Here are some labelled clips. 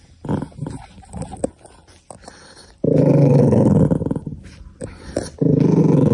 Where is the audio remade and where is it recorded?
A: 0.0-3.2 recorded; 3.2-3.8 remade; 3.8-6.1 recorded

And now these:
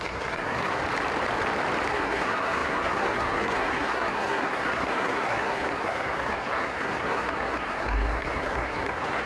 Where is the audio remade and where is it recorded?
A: 0.0-0.8 remade; 0.8-1.9 recorded; 1.9-9.3 remade